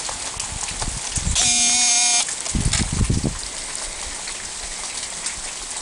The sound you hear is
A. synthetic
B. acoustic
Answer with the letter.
B